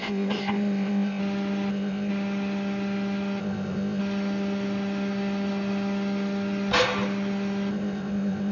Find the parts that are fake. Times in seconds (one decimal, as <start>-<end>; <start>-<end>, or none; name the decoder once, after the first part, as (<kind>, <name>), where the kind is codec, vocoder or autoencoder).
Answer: 0.0-1.2 (codec, ZipCodec); 1.7-2.1; 3.4-4.0; 7.7-8.5